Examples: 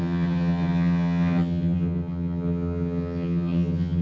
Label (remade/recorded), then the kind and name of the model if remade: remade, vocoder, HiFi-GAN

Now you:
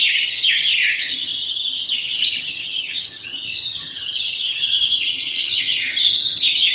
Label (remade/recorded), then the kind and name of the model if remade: remade, vocoder, HiFi-GAN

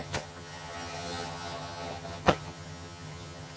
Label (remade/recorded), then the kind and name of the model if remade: remade, vocoder, HiFi-GAN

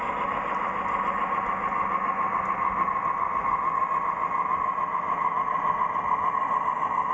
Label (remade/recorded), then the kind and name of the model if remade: recorded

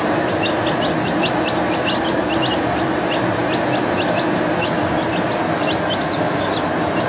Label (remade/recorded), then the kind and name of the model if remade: recorded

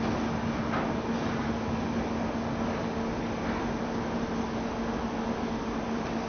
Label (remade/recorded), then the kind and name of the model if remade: recorded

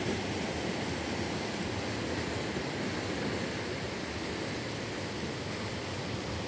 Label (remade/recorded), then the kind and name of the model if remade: recorded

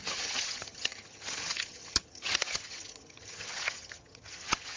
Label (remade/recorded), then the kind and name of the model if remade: remade, vocoder, HiFi-GAN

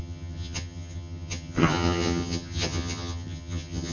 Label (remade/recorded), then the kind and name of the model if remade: remade, vocoder, HiFi-GAN